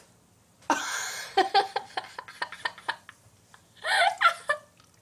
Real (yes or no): yes